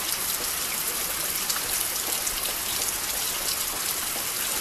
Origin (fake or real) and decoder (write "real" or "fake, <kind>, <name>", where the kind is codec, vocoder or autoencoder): real